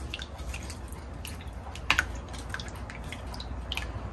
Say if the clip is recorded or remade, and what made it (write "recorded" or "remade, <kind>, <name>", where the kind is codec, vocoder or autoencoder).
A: recorded